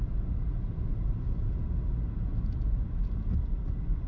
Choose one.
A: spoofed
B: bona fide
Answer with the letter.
B